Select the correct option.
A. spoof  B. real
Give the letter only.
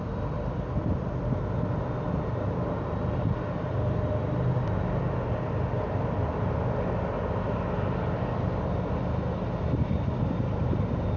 B